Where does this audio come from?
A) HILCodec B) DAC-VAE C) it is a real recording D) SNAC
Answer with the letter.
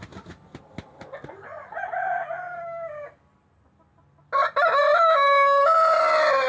C